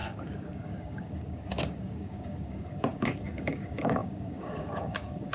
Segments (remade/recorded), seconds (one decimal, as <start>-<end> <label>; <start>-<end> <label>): 0.0-5.3 remade